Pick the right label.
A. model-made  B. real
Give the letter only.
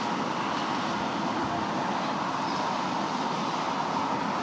B